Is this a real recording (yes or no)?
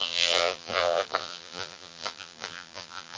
no